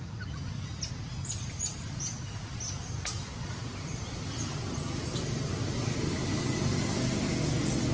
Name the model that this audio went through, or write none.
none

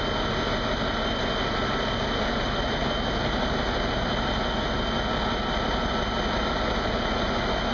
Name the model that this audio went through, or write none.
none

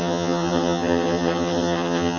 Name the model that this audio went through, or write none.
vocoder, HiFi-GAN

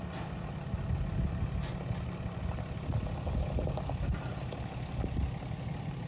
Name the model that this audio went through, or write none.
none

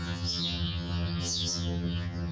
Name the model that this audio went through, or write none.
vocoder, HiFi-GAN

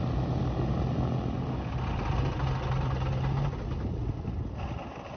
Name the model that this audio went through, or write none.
none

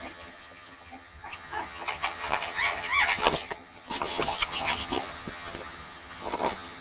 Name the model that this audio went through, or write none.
vocoder, HiFi-GAN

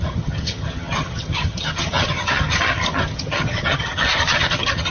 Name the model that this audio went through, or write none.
vocoder, HiFi-GAN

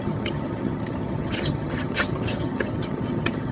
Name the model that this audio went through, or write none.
vocoder, HiFi-GAN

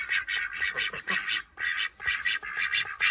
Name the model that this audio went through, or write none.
none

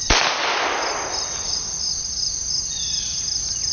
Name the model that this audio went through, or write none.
none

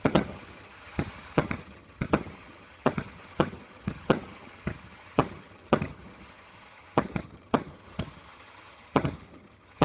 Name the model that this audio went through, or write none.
vocoder, HiFi-GAN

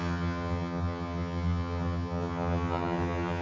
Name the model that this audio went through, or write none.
vocoder, HiFi-GAN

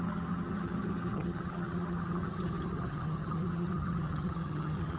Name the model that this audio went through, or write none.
vocoder, HiFi-GAN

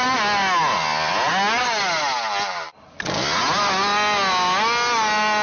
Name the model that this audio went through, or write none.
none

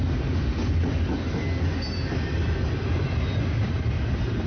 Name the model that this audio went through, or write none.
none